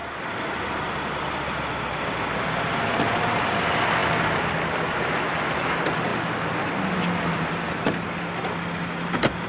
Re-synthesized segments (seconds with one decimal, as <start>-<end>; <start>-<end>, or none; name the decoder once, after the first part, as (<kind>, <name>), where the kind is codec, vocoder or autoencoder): none

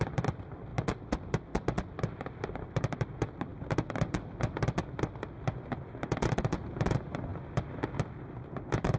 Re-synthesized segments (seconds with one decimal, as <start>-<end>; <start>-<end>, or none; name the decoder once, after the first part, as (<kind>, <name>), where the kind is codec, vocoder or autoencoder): none

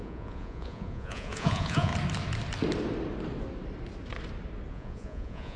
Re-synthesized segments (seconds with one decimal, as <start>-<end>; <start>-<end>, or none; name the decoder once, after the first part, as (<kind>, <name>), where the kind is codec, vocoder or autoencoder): 0.0-1.9 (vocoder, Vocos); 4.7-5.6

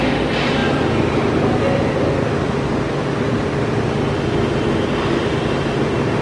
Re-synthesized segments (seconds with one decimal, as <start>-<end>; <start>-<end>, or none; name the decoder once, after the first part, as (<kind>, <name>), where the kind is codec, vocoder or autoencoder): none

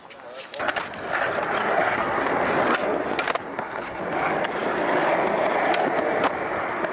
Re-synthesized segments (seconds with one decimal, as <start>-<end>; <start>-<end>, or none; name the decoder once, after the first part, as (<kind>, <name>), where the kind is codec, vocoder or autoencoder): 1.6-2.3 (codec, SNAC); 3.5-4.0

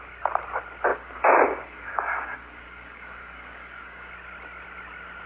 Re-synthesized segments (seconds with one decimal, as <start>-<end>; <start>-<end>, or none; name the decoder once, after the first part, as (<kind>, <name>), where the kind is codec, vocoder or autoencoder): 0.9-4.1 (codec, DAC)